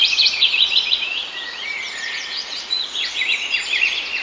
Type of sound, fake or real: fake